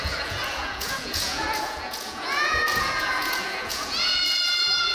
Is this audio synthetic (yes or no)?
yes